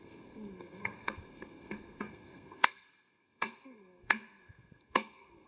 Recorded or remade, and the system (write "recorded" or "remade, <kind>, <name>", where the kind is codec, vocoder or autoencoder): remade, codec, SNAC